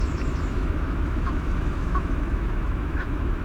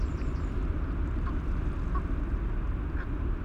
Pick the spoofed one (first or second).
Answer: first